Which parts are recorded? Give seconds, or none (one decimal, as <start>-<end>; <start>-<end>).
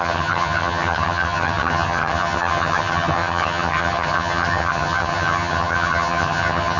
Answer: none